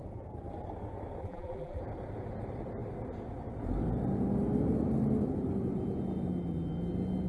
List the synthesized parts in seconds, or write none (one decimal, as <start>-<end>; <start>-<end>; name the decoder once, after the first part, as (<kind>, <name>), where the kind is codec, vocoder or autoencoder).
1.2-1.8 (vocoder, BigVGAN v2)